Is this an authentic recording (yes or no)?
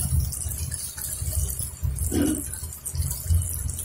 yes